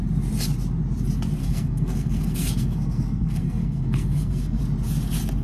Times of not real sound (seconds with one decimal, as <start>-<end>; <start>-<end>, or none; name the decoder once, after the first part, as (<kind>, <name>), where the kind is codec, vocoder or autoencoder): 1.4-4.6 (codec, SNAC)

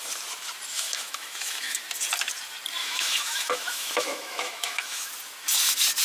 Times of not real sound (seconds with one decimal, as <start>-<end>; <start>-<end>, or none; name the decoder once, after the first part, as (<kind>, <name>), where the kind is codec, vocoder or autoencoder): 0.7-1.8 (autoencoder, DAC-VAE); 2.8-5.1

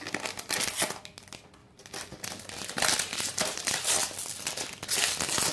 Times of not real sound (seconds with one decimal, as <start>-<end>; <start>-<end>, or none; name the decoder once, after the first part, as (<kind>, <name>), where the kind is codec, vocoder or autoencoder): 1.6-3.9 (vocoder, BigVGAN v2)

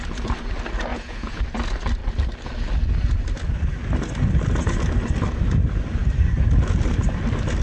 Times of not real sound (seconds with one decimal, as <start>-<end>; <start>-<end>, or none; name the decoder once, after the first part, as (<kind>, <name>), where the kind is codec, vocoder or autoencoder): 0.9-1.4 (vocoder, Vocos)

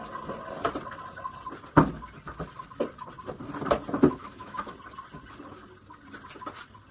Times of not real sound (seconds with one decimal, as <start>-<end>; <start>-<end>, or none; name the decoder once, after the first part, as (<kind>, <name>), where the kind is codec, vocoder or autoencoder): 4.2-4.7 (autoencoder, DAC-VAE)

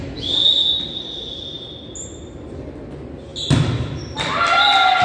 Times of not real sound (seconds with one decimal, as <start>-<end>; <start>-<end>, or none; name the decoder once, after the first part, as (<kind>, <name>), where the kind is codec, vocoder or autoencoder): none